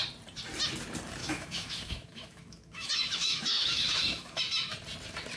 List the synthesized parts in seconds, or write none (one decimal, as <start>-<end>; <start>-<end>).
1.2-4.4